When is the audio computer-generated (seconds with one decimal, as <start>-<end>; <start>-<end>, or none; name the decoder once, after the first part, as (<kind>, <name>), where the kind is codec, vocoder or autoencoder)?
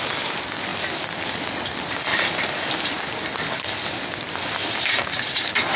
none